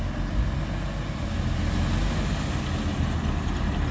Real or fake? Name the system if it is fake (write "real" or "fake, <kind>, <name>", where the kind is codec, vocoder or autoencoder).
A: real